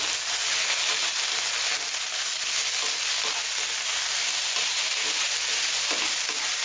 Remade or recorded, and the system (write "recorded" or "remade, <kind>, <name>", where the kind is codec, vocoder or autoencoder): recorded